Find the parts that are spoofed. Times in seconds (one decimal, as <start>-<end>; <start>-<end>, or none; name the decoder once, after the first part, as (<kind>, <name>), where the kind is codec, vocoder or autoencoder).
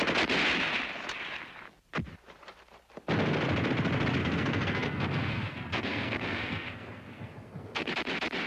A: 4.2-7.9 (codec, SNAC)